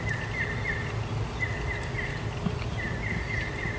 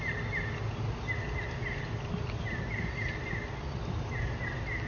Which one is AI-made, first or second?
first